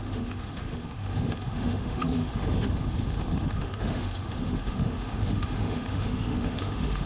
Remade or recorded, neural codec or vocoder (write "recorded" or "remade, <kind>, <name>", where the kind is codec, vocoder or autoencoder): remade, autoencoder, DAC-VAE